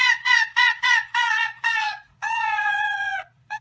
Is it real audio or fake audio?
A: fake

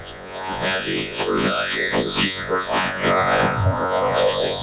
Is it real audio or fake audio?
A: fake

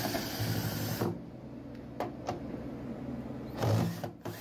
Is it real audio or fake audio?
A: real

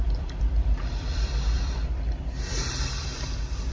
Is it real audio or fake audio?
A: fake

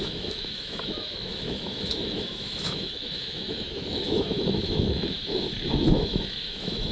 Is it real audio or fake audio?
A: fake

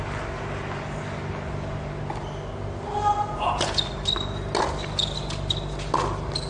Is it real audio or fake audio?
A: real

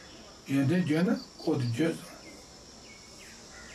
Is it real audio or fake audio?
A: real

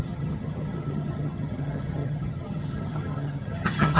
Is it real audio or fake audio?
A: fake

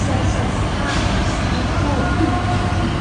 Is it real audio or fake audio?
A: real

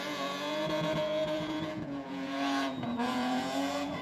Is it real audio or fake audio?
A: fake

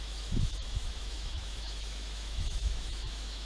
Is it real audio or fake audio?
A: fake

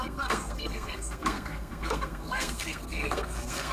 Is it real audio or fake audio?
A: fake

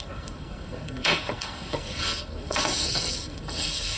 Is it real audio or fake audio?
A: fake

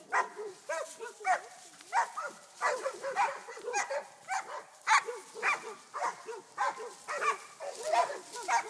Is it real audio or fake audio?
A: real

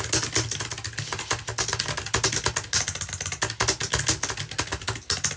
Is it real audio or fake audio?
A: real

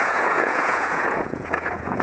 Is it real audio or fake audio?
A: fake